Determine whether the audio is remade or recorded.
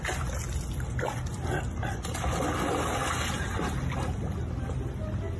recorded